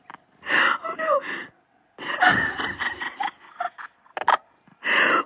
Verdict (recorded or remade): recorded